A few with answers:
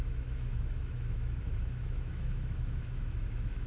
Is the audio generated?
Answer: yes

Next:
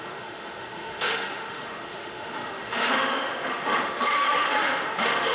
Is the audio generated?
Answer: yes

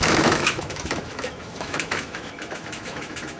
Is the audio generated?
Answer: yes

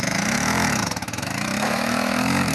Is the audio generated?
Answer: yes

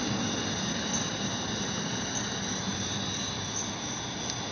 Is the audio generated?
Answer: no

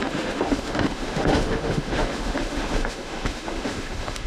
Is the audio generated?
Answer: yes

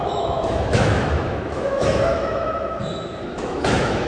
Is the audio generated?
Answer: yes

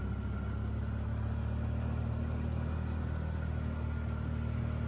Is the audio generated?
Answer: no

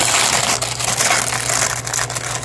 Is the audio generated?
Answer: no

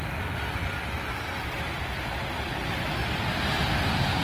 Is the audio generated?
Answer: no